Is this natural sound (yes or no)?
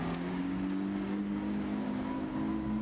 no